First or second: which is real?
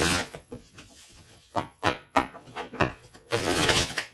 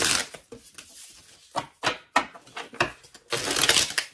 second